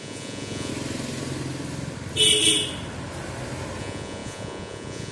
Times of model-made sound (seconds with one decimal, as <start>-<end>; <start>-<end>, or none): 0.0-0.7; 3.8-5.1